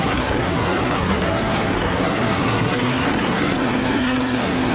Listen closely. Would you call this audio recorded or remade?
remade